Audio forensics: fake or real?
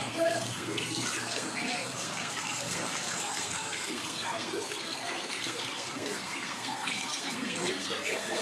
fake